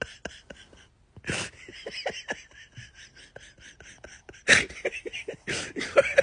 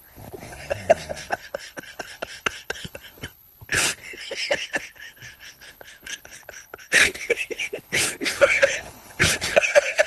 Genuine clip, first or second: first